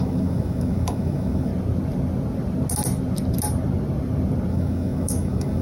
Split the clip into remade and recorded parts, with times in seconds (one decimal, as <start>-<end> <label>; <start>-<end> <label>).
0.0-1.5 remade; 1.5-4.5 recorded; 4.5-5.6 remade